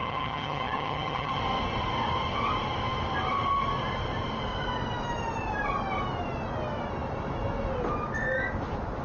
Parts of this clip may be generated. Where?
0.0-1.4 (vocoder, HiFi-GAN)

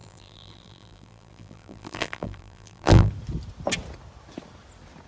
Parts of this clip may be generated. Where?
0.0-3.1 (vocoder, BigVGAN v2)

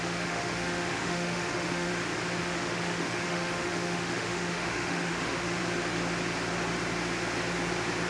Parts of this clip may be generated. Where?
0.0-1.9 (autoencoder, DAC-VAE); 2.4-5.6